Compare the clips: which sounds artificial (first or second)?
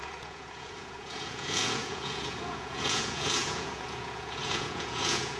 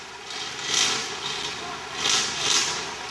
first